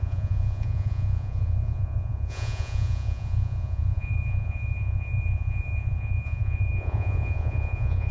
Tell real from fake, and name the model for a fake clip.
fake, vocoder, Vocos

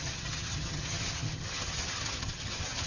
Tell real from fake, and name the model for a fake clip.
fake, vocoder, HiFi-GAN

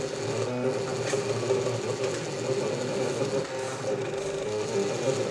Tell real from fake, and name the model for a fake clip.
real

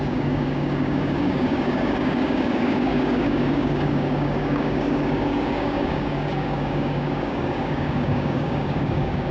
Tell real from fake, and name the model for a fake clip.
fake, codec, DAC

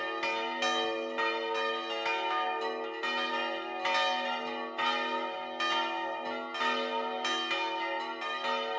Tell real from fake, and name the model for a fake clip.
real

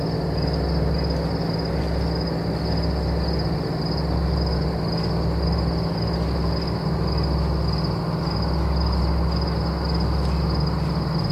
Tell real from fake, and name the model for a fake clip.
real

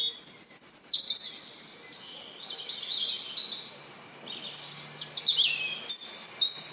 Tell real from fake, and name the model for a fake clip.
real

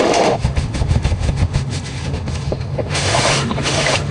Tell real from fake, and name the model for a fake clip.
fake, autoencoder, DAC-VAE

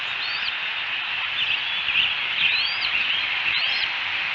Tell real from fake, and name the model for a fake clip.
real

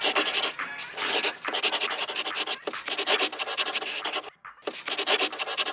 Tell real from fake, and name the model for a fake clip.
real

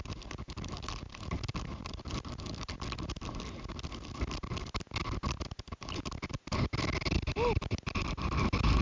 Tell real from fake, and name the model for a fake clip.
real